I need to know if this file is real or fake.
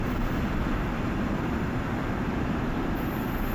fake